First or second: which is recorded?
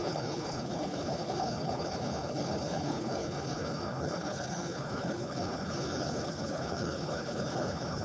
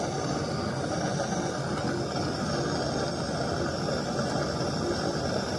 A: second